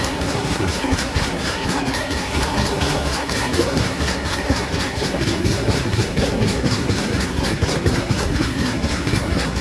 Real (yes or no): no